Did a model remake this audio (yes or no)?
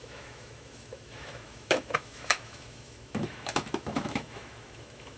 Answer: yes